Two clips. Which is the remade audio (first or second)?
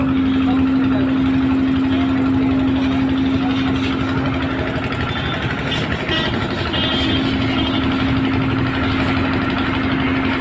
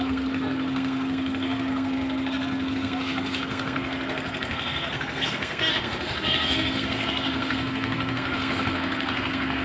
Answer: second